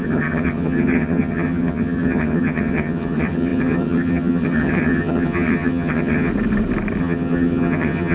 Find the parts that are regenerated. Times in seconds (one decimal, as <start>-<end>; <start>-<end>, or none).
0.0-6.3; 7.0-8.1